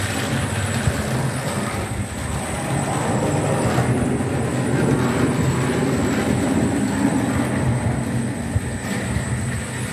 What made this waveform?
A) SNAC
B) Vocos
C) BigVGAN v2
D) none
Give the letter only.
D